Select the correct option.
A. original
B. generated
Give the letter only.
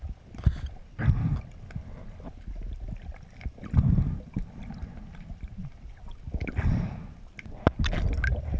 A